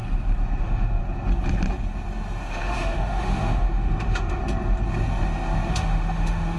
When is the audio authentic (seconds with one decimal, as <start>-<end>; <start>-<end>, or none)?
0.0-0.6; 1.0-2.5; 4.4-5.7